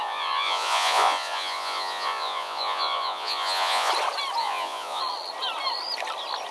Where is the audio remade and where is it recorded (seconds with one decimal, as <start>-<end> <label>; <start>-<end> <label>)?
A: 0.0-3.9 remade; 3.9-4.4 recorded; 4.4-5.0 remade; 5.0-6.5 recorded